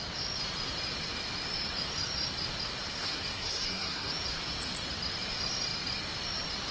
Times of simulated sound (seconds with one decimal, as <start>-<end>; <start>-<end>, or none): 2.9-4.1